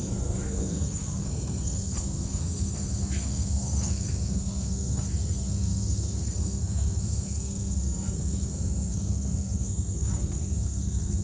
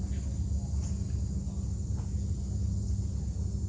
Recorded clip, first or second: second